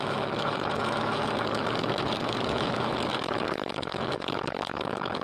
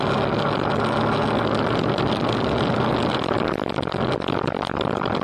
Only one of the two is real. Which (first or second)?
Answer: second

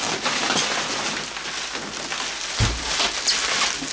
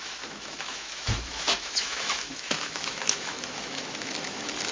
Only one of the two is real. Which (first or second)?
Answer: first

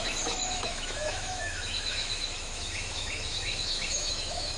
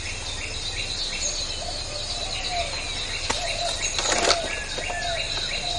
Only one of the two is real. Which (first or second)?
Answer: second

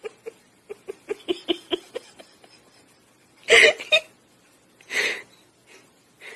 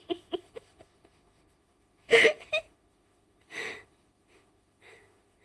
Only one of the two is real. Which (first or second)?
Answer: first